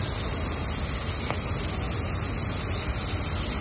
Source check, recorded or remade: recorded